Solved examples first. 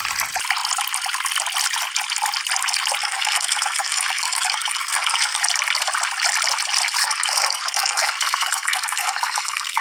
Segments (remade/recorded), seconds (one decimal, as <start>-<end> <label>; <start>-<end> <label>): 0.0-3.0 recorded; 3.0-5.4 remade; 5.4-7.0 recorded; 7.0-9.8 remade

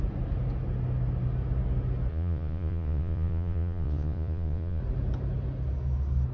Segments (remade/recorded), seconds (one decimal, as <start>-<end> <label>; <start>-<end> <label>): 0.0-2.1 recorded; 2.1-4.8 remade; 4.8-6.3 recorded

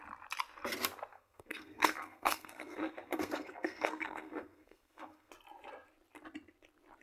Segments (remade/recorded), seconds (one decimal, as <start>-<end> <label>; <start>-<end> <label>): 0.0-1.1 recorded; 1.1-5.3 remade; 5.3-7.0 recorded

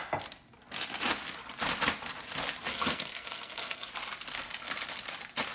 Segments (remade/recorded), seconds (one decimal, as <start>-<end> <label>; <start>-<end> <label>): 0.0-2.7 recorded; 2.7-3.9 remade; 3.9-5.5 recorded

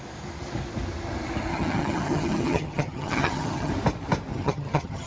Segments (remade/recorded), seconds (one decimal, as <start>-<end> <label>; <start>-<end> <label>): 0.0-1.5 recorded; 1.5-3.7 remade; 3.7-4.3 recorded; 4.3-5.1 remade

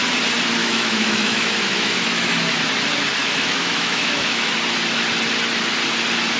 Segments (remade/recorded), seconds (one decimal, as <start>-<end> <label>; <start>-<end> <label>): 0.0-0.6 recorded; 0.6-2.3 remade; 2.3-3.2 recorded; 3.2-4.5 remade; 4.5-6.4 recorded